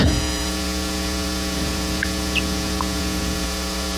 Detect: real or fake fake